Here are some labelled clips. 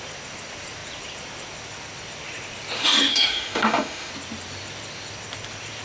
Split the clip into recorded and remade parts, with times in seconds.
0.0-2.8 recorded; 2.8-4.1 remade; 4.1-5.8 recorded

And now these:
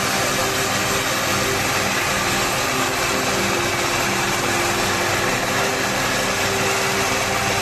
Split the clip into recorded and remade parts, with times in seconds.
0.0-7.6 recorded

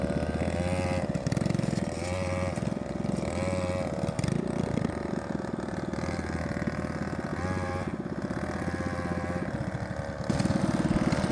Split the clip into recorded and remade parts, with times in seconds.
0.0-11.3 recorded

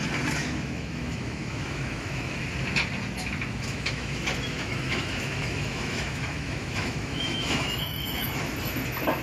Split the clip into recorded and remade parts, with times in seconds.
0.0-0.4 recorded; 0.4-2.4 remade; 2.4-3.5 recorded; 3.5-8.4 remade; 8.4-9.2 recorded